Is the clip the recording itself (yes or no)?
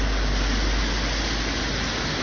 yes